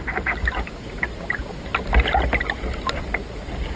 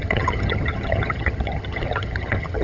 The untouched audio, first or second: first